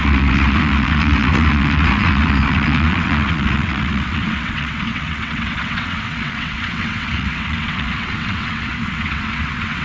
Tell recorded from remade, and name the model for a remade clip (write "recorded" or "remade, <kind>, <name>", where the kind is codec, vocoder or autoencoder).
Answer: remade, vocoder, WaveNeXt